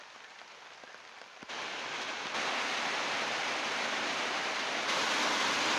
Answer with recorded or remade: recorded